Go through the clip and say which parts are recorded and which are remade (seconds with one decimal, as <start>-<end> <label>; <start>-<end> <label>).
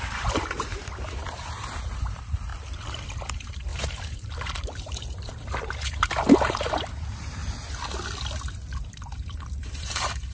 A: 0.0-2.5 remade; 2.5-3.3 recorded; 3.3-7.4 remade; 7.4-8.8 recorded; 8.8-10.3 remade